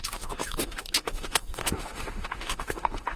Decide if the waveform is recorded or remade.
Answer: remade